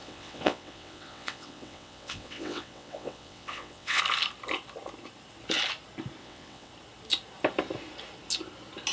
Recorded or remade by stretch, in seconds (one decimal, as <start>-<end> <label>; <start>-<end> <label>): 0.0-4.0 remade; 4.0-6.2 recorded; 6.2-6.7 remade; 6.7-8.9 recorded